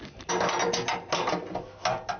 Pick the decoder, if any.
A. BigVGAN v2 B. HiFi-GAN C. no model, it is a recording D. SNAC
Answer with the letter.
C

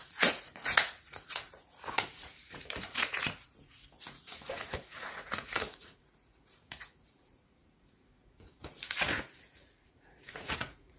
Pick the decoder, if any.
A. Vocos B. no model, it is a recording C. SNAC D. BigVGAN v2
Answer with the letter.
A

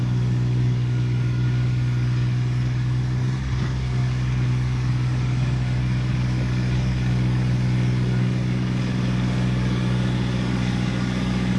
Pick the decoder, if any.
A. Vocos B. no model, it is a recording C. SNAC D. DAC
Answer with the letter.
D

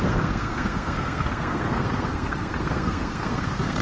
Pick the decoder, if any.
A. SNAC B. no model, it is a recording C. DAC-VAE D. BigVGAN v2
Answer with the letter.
A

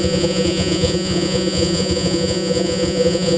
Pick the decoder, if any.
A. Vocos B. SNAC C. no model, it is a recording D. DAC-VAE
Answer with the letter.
A